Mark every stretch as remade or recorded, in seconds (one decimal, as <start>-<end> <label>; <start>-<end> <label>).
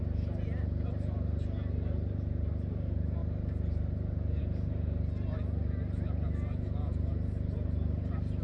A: 0.0-8.4 recorded